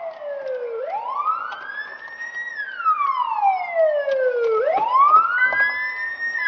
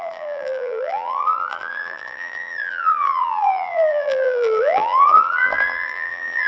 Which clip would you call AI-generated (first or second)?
second